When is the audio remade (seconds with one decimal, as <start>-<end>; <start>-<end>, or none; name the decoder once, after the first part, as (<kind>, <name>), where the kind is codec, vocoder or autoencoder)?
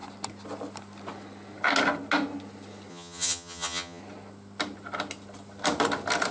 2.9-4.0 (vocoder, HiFi-GAN)